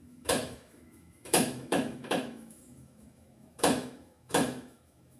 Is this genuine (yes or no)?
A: no